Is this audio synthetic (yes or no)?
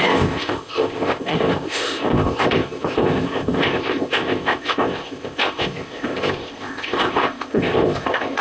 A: yes